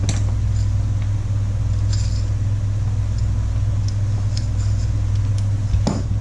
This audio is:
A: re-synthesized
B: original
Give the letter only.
B